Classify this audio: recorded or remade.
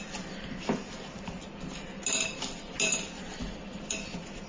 recorded